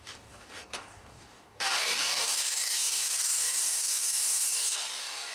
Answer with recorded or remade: remade